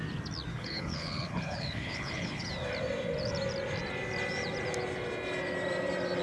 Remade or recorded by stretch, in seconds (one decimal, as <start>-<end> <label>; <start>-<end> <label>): 0.0-0.5 recorded; 0.5-2.5 remade; 2.5-6.2 recorded